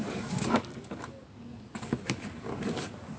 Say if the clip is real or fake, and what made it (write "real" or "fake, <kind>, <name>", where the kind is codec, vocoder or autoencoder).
fake, codec, DAC